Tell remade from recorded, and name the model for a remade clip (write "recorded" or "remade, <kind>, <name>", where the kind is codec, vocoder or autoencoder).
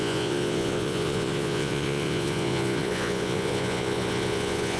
remade, vocoder, Vocos